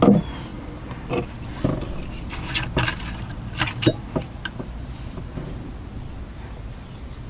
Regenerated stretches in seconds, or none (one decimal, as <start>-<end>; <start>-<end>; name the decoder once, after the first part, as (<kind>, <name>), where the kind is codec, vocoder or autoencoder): 0.5-2.0 (vocoder, BigVGAN v2); 2.9-4.8